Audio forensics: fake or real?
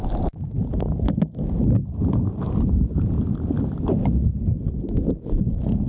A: real